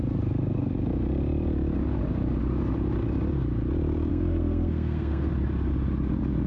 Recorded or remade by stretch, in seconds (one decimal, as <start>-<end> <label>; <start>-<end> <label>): 0.0-4.1 recorded; 4.1-5.3 remade; 5.3-6.5 recorded